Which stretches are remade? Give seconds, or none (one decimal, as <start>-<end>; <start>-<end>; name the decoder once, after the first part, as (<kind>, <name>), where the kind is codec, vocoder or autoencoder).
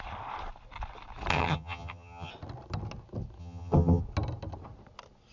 1.3-2.3 (vocoder, HiFi-GAN); 3.4-4.0